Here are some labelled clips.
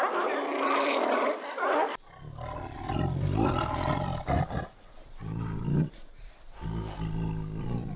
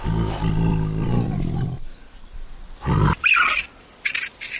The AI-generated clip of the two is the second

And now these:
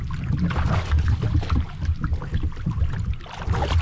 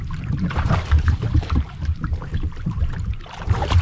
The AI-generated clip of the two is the second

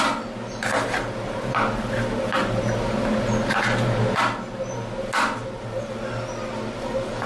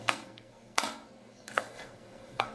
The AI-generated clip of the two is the second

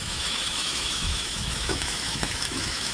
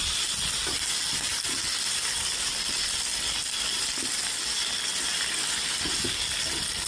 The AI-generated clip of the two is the first